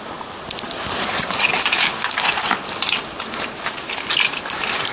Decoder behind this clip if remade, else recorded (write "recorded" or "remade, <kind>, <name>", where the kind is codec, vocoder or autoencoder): recorded